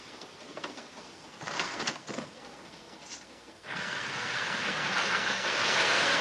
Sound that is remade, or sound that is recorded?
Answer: remade